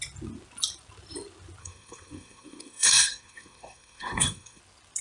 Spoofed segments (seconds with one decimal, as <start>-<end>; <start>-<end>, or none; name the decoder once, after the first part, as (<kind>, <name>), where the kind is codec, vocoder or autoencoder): 1.6-4.6 (codec, SNAC)